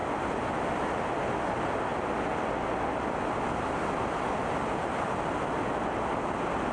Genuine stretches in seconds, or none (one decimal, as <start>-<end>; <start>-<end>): 0.0-6.7